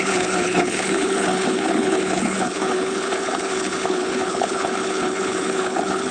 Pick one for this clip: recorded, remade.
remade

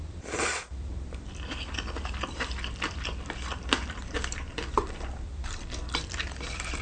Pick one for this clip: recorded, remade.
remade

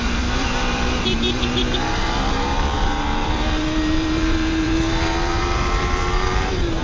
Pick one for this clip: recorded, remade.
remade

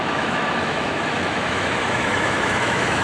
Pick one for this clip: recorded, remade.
remade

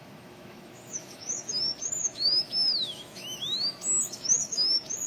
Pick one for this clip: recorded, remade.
remade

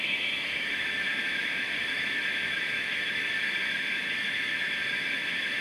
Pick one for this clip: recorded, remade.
remade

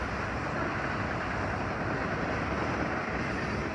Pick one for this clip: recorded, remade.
recorded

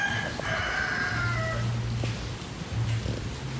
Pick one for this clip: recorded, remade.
recorded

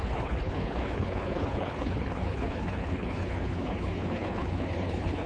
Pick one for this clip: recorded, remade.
remade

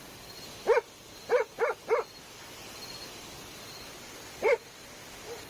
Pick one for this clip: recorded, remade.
remade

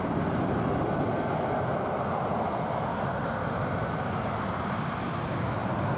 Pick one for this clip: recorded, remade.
recorded